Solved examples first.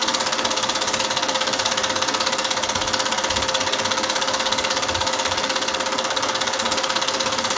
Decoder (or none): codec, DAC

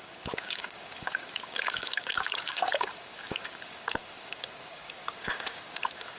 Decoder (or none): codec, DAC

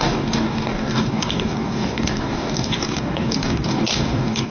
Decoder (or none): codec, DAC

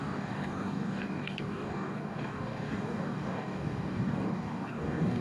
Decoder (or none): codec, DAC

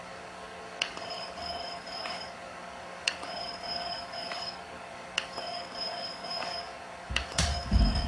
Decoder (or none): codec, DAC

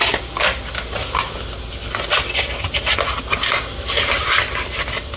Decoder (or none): none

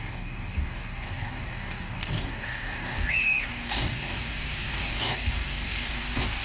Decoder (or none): codec, DAC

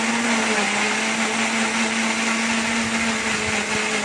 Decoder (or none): none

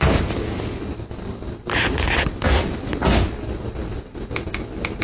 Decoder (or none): none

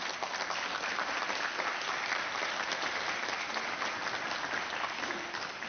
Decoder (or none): none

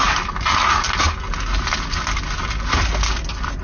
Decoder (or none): none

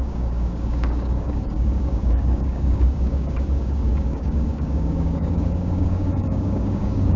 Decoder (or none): codec, DAC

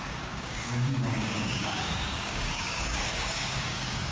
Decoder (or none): codec, DAC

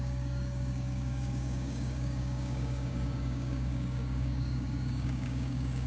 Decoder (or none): codec, DAC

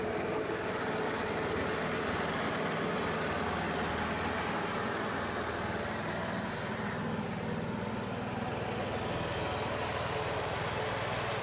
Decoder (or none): none